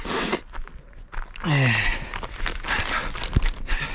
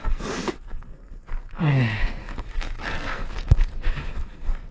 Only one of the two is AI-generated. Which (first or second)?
second